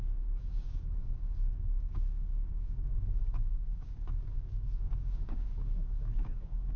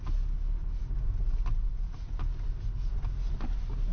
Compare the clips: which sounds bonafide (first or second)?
second